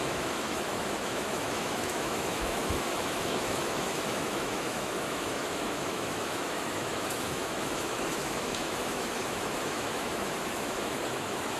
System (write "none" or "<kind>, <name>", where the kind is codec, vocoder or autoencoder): autoencoder, DAC-VAE